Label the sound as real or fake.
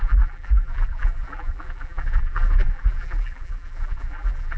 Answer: fake